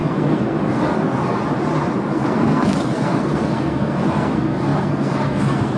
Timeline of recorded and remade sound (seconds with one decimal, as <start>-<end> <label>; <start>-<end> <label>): 0.0-1.4 remade; 1.4-2.1 recorded; 2.1-5.8 remade